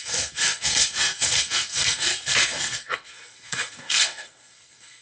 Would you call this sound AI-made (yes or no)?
yes